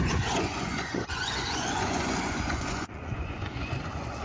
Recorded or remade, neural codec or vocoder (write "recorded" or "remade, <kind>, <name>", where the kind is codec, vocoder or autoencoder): remade, vocoder, Vocos